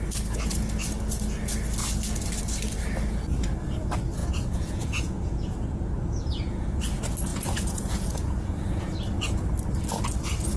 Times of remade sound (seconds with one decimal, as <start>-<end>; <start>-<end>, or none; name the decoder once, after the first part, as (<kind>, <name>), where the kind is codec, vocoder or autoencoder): 4.2-6.8 (vocoder, Vocos); 7.3-8.8